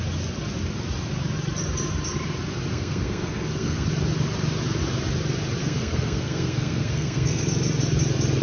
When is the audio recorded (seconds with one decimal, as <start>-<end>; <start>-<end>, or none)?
0.0-2.7; 3.9-5.6; 7.4-8.4